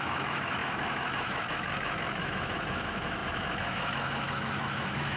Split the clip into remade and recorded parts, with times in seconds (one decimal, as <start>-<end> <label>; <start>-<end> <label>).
0.0-5.2 remade